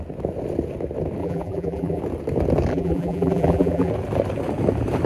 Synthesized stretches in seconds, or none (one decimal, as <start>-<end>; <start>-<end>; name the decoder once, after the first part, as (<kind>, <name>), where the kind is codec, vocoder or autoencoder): 1.2-2.0 (vocoder, BigVGAN v2); 2.7-3.9